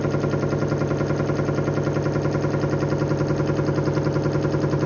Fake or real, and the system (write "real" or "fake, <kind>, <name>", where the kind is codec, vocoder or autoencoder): real